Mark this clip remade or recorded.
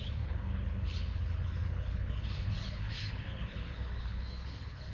remade